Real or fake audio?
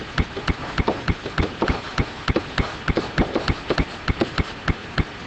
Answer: real